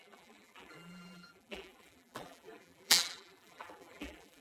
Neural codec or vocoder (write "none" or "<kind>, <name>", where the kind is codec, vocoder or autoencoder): vocoder, BigVGAN v2